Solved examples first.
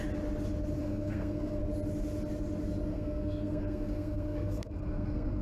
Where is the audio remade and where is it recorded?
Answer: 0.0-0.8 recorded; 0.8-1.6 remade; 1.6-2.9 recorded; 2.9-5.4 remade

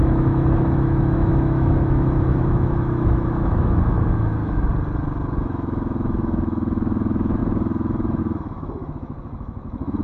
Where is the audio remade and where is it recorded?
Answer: 0.0-4.7 remade; 4.7-5.4 recorded; 5.4-10.0 remade